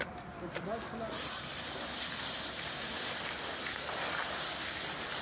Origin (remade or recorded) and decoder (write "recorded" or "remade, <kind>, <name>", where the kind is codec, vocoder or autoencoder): recorded